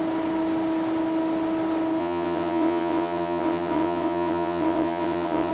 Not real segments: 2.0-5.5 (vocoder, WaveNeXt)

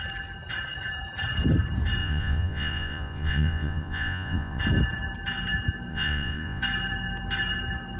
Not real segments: 2.0-4.6 (vocoder, Vocos); 5.9-6.6

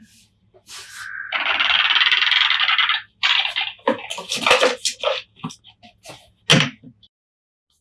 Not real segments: none

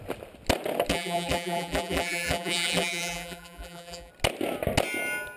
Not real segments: 0.9-4.1 (vocoder, BigVGAN v2)

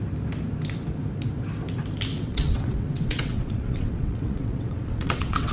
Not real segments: 2.1-5.5 (vocoder, WaveNeXt)

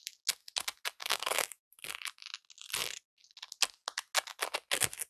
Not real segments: 1.0-1.9 (codec, DAC)

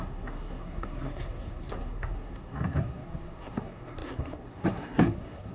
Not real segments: 0.0-5.5 (codec, SNAC)

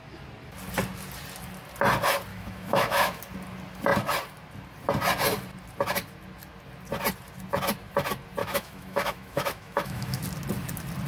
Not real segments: 2.3-3.2 (autoencoder, DAC-VAE); 8.4-10.2